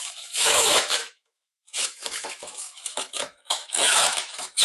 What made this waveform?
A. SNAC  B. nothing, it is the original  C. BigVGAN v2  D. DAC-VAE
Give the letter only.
D